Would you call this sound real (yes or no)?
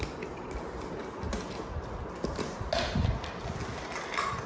yes